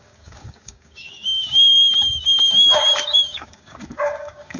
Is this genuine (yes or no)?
no